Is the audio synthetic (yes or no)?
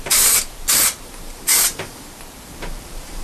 yes